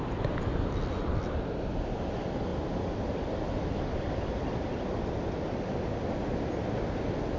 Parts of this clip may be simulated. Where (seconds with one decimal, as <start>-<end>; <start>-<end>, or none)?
none